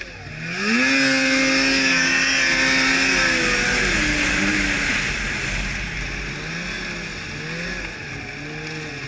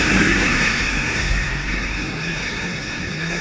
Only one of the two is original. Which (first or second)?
first